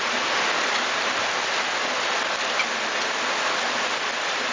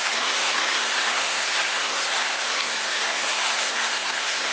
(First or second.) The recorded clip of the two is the first